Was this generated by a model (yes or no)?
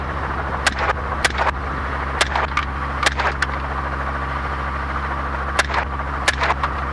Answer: no